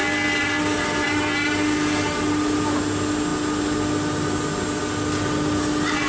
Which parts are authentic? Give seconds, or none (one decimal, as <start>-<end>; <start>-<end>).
0.0-6.1